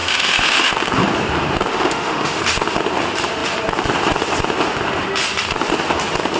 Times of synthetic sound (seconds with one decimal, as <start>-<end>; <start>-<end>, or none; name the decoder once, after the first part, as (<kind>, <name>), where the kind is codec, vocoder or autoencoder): 0.0-0.7 (autoencoder, DAC-VAE); 1.7-2.4